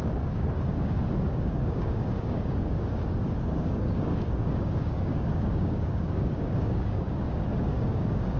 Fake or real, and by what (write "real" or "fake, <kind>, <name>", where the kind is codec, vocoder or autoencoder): fake, codec, DAC